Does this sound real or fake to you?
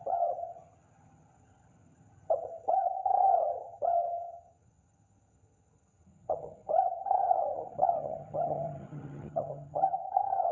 fake